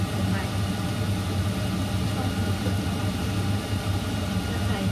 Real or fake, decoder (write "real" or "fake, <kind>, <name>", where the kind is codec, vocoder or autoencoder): real